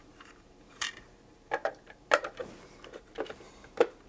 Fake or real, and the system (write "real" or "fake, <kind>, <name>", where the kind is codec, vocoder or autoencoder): fake, vocoder, BigVGAN v2